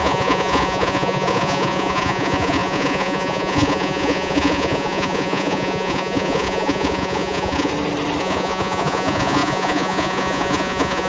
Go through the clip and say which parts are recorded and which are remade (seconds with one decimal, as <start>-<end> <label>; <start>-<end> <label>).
0.0-7.7 remade; 7.7-8.2 recorded; 8.2-11.1 remade